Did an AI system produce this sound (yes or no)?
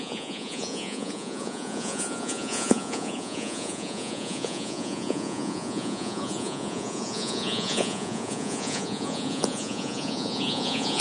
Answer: yes